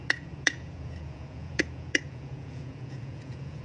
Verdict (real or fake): fake